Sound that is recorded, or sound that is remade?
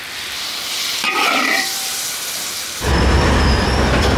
remade